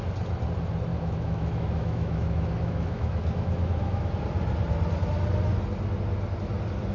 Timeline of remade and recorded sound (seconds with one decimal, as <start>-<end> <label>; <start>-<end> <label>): 0.0-0.9 recorded; 0.9-4.1 remade; 4.1-6.9 recorded